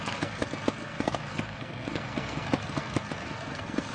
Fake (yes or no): yes